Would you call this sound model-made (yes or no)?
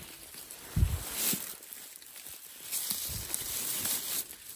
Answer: no